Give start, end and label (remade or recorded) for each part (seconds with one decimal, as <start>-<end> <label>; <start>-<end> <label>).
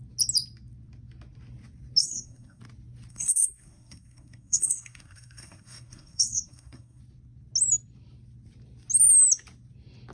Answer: 0.0-2.0 recorded; 2.0-2.6 remade; 2.6-3.1 recorded; 3.1-7.0 remade; 7.0-10.1 recorded